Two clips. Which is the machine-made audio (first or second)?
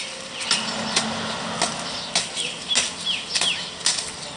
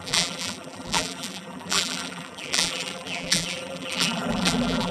second